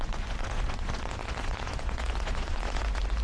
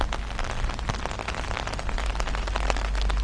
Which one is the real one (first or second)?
second